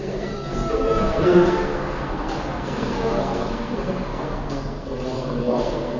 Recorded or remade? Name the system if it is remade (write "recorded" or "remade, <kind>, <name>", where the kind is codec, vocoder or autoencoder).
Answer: remade, codec, SNAC